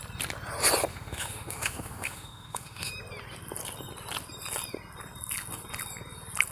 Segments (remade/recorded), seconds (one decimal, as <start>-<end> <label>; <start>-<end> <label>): 0.0-0.9 recorded; 0.9-2.9 remade; 2.9-6.5 recorded